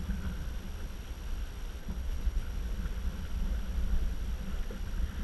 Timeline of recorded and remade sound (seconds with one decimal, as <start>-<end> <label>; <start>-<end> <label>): 0.0-1.8 recorded; 1.8-2.5 remade; 2.5-5.2 recorded